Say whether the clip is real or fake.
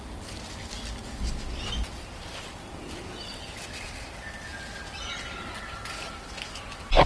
real